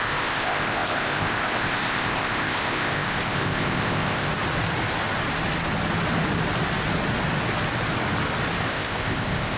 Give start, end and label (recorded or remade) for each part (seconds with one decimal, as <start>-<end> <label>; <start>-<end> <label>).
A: 0.0-4.3 remade; 4.3-8.7 recorded; 8.7-9.6 remade